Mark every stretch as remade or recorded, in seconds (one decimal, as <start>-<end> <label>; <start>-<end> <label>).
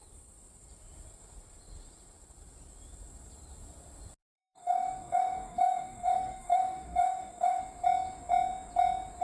0.0-4.2 recorded; 4.2-7.6 remade; 7.6-9.2 recorded